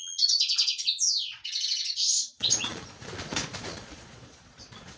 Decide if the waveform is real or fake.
fake